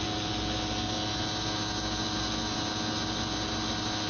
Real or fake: real